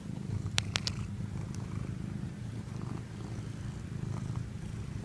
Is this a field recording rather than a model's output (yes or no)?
yes